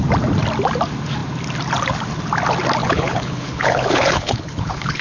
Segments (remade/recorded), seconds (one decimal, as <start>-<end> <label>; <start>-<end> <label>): 0.0-2.8 recorded; 2.8-5.0 remade